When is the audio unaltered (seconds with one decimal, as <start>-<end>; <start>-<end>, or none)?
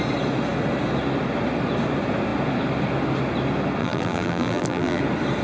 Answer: 0.0-3.8; 5.0-5.4